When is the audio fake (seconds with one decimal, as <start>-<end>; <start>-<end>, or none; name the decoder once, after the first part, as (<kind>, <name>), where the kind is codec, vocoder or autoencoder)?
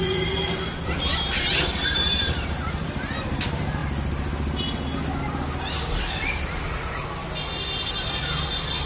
0.0-3.8 (vocoder, BigVGAN v2); 6.0-7.2